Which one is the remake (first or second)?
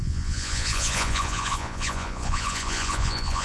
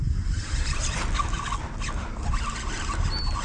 first